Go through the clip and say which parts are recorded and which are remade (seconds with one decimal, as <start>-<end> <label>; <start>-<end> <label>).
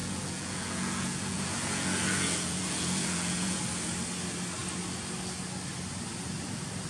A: 0.0-3.6 remade; 3.6-6.9 recorded